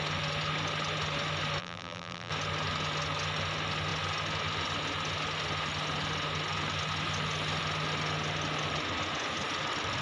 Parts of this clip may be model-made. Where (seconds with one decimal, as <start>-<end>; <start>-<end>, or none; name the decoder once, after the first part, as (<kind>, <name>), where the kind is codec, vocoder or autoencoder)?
1.6-2.3 (vocoder, BigVGAN v2)